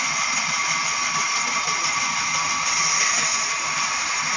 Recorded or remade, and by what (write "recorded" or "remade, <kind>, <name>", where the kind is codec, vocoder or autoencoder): recorded